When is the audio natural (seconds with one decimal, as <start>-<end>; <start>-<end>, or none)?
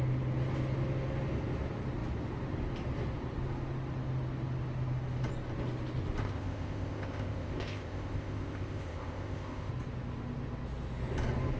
0.0-6.2; 9.7-11.6